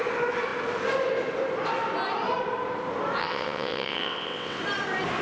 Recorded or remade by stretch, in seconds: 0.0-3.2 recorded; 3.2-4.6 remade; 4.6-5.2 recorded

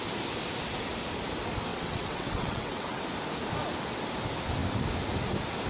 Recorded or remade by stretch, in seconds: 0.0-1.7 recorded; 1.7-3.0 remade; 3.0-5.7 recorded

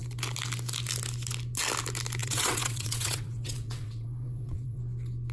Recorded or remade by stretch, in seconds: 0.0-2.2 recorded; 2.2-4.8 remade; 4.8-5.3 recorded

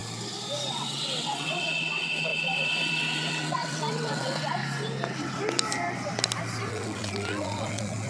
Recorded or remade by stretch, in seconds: 0.0-0.7 recorded; 0.7-4.6 remade; 4.6-6.7 recorded; 6.7-8.1 remade